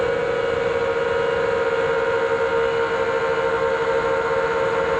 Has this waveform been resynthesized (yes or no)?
no